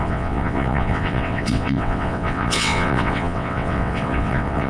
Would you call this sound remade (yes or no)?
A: yes